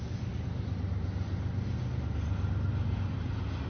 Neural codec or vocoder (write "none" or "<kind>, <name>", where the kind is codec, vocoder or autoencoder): none